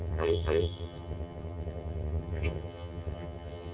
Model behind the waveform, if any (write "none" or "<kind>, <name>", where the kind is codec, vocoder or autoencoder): vocoder, HiFi-GAN